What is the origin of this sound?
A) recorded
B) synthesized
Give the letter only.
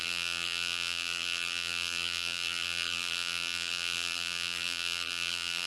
B